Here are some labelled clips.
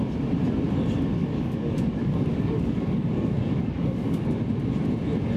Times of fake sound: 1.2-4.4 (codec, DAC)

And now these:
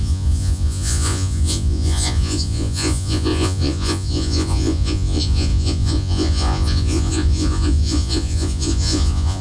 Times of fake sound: 0.0-9.4 (vocoder, Vocos)

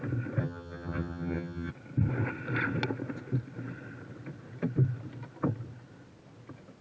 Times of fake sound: 0.4-1.7 (vocoder, HiFi-GAN)